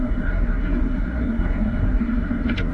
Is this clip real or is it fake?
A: fake